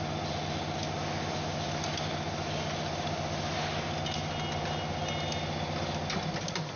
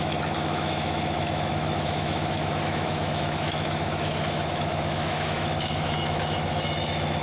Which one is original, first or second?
first